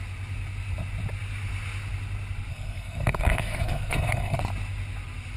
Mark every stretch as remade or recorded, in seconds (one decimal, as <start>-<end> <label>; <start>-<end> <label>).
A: 0.0-2.5 recorded; 2.5-4.4 remade; 4.4-5.4 recorded